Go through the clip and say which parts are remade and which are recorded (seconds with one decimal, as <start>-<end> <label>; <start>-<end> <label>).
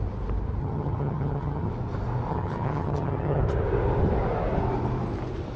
0.0-0.6 recorded; 0.6-1.7 remade; 1.7-2.3 recorded; 2.3-3.4 remade; 3.4-5.6 recorded